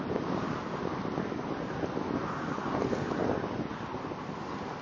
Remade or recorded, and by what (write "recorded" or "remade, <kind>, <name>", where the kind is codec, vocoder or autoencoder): recorded